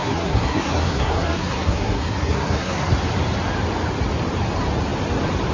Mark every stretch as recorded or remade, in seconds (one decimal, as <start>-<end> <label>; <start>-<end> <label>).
0.0-2.9 remade; 2.9-5.5 recorded